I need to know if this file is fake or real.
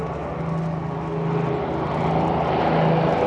real